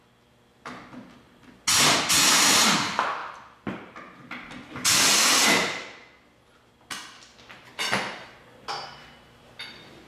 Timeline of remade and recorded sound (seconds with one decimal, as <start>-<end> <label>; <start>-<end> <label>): 0.0-10.1 recorded